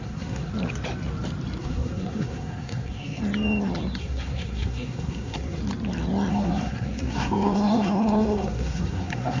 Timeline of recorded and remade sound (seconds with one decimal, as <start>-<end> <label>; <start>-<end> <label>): 0.0-0.5 remade; 0.5-1.6 recorded; 1.6-3.2 remade; 3.2-4.0 recorded; 4.0-5.6 remade; 5.6-6.3 recorded; 6.3-9.4 remade